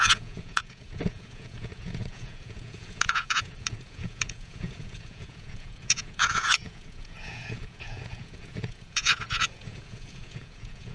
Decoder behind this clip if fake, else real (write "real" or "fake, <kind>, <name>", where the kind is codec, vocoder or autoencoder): fake, vocoder, Vocos